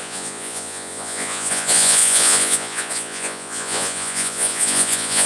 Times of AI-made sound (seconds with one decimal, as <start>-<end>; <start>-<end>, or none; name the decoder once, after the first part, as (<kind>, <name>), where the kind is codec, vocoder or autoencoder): 0.0-5.3 (vocoder, Vocos)